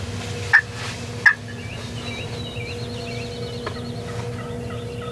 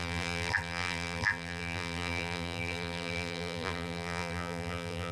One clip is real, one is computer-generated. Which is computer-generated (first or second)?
second